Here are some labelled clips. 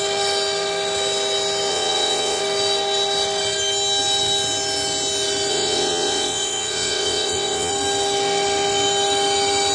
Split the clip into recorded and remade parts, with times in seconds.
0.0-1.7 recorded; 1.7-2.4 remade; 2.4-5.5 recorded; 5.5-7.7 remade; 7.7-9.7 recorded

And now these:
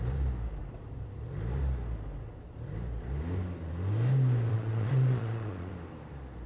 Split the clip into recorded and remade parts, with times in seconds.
0.0-4.5 recorded; 4.5-5.7 remade; 5.7-6.5 recorded

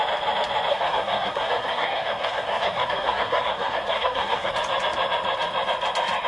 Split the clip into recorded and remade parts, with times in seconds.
0.0-0.7 recorded; 0.7-4.5 remade; 4.5-6.3 recorded

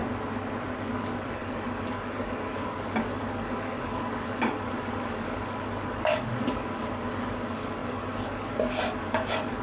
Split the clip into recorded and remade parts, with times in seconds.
0.0-0.8 recorded; 0.8-9.6 remade

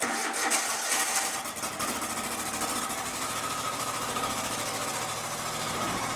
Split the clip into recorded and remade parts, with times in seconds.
0.0-3.1 recorded; 3.1-4.9 remade; 4.9-6.2 recorded

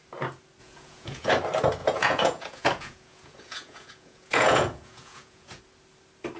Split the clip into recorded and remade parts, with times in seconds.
0.0-0.6 recorded; 0.6-1.3 remade; 1.3-1.8 recorded; 1.8-5.6 remade; 5.6-6.4 recorded